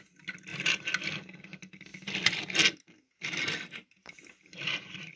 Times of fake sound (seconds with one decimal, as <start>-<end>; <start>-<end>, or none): none